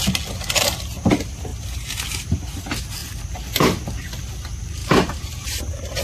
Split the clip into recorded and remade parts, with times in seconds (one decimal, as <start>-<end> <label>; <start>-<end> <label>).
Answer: 0.0-1.5 recorded; 1.5-2.6 remade; 2.6-4.8 recorded; 4.8-5.6 remade; 5.6-6.0 recorded